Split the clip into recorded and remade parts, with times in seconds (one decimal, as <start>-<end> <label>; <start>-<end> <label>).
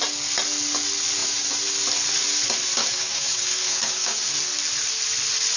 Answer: 0.0-2.8 recorded; 2.8-4.3 remade; 4.3-5.6 recorded